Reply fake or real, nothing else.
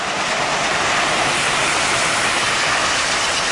fake